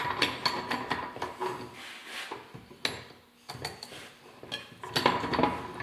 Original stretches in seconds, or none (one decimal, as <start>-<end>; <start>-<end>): 0.0-5.8